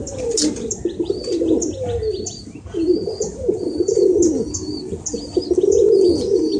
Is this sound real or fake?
real